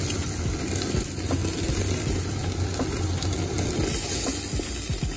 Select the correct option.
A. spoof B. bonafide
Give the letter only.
B